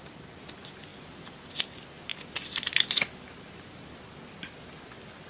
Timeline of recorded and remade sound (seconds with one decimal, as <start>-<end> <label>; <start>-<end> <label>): 0.0-2.1 recorded; 2.1-4.2 remade; 4.2-5.3 recorded